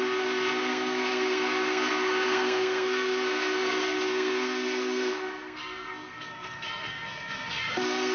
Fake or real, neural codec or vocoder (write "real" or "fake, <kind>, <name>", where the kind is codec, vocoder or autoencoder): fake, codec, SNAC